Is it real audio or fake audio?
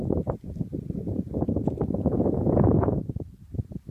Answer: fake